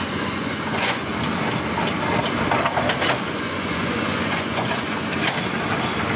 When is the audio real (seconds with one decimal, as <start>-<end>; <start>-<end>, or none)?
1.1-3.2; 5.1-6.2